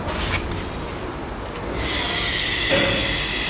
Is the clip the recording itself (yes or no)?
yes